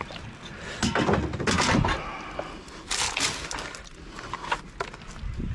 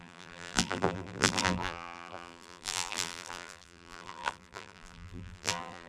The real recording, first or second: first